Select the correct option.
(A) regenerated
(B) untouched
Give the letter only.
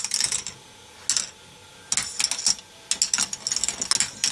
B